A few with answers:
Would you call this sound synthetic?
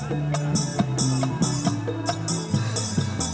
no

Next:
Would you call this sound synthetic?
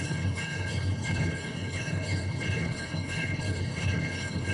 yes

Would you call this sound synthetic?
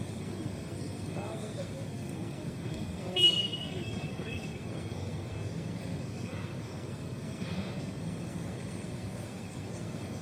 yes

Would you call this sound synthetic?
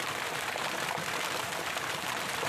no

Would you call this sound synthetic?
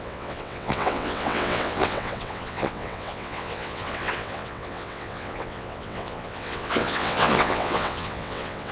yes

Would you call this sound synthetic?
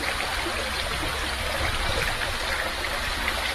no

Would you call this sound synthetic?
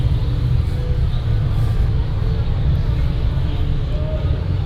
no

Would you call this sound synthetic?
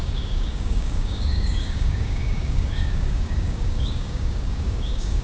yes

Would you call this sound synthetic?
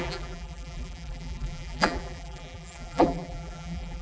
yes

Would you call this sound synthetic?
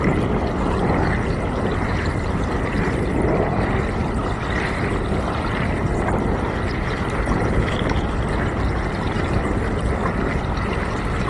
no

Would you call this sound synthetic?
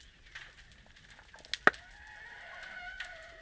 no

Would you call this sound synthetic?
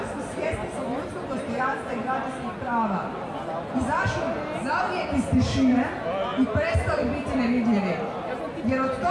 no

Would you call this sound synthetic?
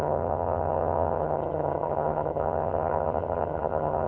yes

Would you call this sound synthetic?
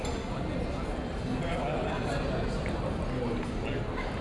no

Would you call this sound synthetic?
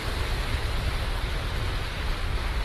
yes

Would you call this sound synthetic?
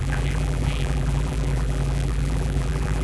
yes